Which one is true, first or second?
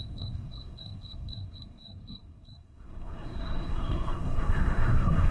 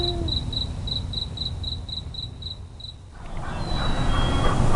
second